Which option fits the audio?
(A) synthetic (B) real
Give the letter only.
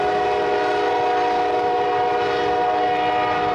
B